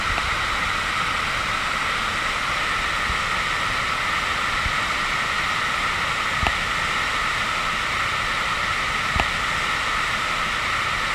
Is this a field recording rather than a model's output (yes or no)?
yes